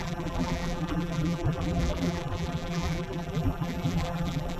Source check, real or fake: fake